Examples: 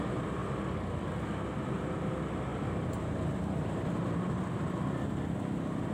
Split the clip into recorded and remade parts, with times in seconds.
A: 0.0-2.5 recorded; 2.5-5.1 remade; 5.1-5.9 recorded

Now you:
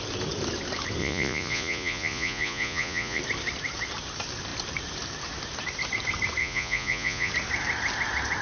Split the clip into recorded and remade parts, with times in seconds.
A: 0.0-1.0 recorded; 1.0-3.2 remade; 3.2-6.4 recorded; 6.4-7.3 remade; 7.3-8.4 recorded

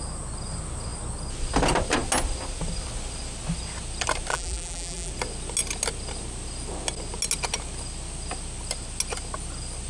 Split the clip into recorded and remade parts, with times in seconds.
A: 0.0-4.3 recorded; 4.3-5.1 remade; 5.1-9.9 recorded

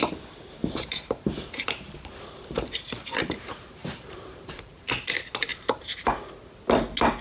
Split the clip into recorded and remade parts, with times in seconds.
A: 0.0-0.6 recorded; 0.6-4.9 remade; 4.9-5.5 recorded; 5.5-6.1 remade; 6.1-7.2 recorded